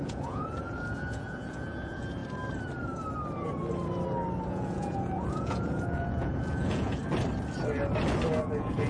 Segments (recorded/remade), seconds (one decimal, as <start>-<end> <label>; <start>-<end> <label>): 0.0-2.2 remade; 2.2-4.5 recorded; 4.5-7.0 remade; 7.0-8.4 recorded; 8.4-8.9 remade